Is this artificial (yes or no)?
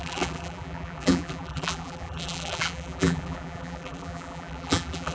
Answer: yes